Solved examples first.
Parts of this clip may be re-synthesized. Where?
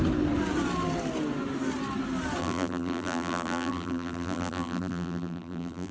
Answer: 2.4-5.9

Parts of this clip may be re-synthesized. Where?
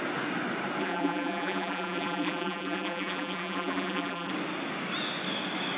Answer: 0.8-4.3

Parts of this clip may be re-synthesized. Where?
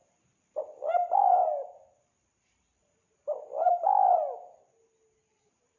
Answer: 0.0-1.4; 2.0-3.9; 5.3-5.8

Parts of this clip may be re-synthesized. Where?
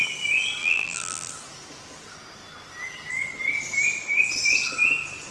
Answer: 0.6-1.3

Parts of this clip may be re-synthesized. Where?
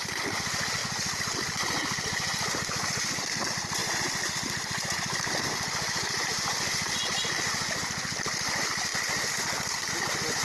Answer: none